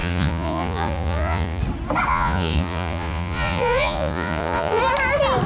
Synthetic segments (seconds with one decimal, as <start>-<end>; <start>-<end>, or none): 0.0-1.6; 2.1-4.8